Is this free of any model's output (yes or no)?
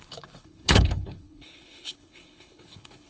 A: no